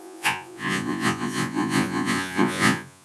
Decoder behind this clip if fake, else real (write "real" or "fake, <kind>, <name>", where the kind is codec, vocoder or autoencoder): fake, vocoder, Vocos